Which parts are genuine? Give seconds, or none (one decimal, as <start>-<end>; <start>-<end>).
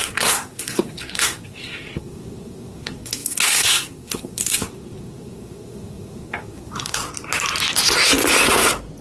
7.0-9.0